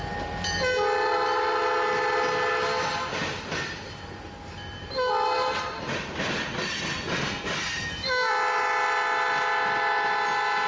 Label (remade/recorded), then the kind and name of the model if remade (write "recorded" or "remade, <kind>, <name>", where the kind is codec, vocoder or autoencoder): recorded